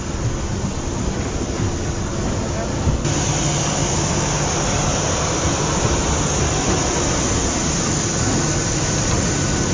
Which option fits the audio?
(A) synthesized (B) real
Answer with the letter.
B